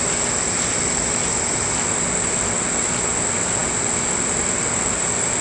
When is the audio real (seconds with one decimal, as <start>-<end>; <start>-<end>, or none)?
0.0-5.4